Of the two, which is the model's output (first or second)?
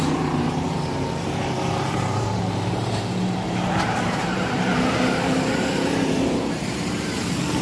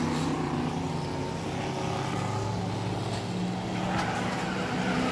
first